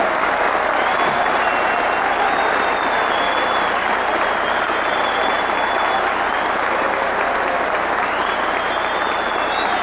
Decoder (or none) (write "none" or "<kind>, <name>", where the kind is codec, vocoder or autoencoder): none